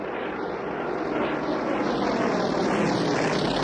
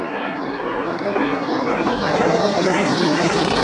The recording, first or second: first